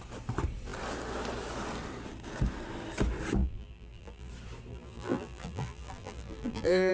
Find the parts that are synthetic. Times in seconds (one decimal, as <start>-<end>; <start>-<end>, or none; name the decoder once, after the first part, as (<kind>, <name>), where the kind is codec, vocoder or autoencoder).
3.4-4.3 (vocoder, BigVGAN v2); 4.7-6.9